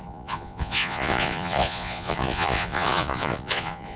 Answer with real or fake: fake